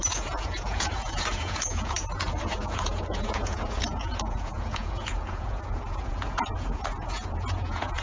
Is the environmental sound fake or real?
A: fake